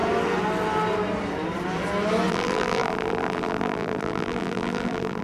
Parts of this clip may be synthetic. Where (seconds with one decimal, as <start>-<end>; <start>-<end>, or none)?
2.3-5.2